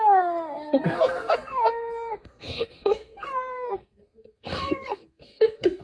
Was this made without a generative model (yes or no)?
no